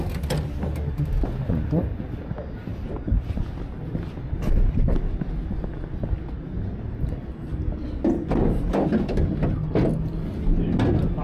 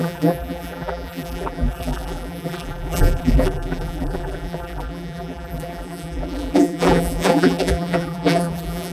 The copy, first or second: second